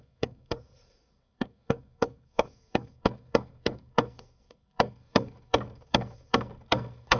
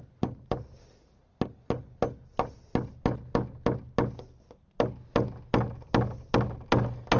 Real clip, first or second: second